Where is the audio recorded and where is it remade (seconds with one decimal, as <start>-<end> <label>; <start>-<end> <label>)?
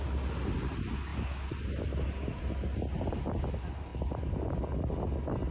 0.0-5.5 recorded